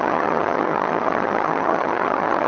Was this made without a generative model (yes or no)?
no